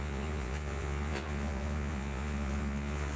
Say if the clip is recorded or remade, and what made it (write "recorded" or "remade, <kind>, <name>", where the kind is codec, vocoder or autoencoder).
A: remade, vocoder, Vocos